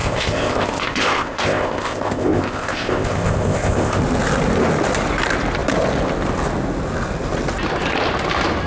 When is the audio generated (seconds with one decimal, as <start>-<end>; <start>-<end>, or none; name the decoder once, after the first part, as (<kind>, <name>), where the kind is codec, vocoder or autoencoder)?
0.0-4.0 (codec, ZipCodec)